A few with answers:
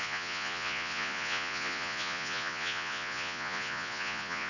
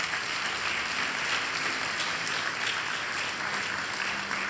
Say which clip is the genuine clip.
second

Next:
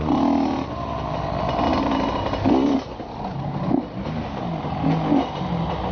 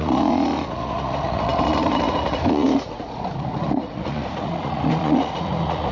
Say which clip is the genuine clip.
first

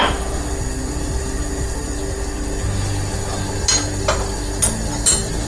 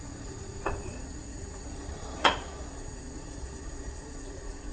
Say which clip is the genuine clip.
first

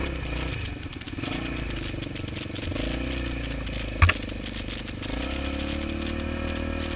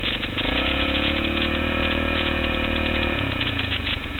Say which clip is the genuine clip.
first